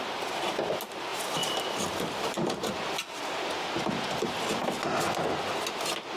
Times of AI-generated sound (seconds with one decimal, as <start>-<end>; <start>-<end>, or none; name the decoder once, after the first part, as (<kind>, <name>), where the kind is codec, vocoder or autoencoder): 1.1-4.3 (vocoder, BigVGAN v2)